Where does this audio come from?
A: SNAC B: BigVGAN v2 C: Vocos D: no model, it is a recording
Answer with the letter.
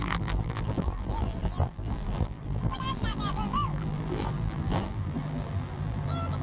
B